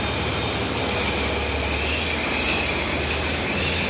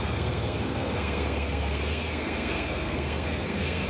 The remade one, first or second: second